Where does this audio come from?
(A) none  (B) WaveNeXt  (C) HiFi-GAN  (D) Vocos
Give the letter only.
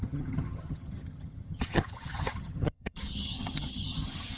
C